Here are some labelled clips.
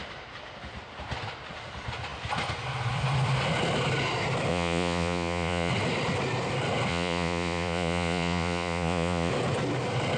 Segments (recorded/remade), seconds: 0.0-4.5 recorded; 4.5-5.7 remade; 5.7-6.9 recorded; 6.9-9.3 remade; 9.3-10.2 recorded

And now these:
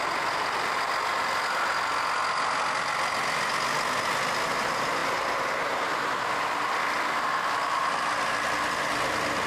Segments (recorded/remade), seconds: 0.0-9.5 recorded

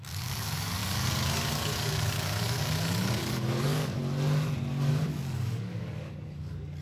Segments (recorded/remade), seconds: 0.0-4.0 remade; 4.0-4.9 recorded; 4.9-6.8 remade